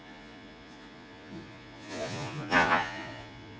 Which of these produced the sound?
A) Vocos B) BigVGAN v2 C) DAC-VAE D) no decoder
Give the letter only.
A